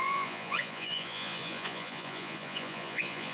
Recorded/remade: remade